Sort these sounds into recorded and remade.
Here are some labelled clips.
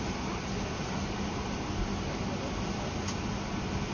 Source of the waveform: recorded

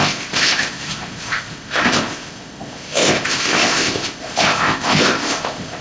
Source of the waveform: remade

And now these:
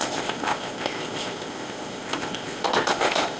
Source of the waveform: remade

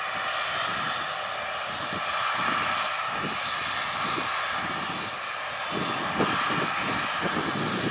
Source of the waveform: recorded